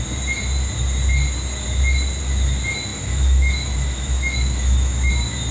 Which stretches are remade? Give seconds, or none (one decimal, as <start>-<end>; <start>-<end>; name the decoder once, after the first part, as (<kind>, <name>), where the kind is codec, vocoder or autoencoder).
2.9-5.1 (autoencoder, DAC-VAE)